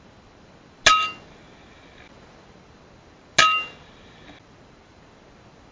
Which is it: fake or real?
real